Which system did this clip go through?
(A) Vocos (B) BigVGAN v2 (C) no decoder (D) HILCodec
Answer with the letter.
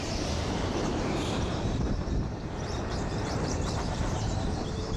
B